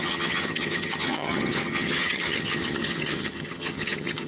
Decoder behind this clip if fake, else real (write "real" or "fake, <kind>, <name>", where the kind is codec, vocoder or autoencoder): fake, vocoder, HiFi-GAN